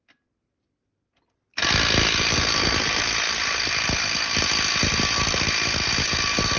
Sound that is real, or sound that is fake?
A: real